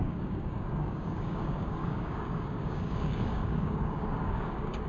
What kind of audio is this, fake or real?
fake